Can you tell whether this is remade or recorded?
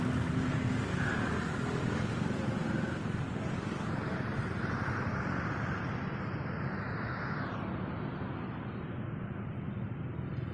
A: recorded